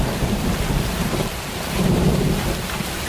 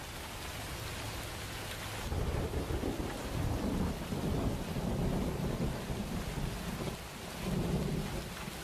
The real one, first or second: second